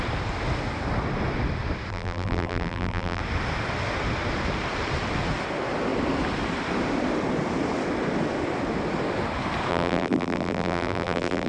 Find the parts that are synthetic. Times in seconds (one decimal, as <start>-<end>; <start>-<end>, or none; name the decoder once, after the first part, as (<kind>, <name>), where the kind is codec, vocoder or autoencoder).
1.9-3.2 (vocoder, BigVGAN v2); 9.7-11.5